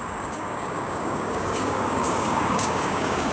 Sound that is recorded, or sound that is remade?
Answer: remade